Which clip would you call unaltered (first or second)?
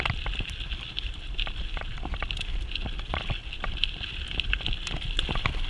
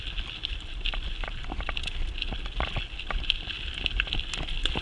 second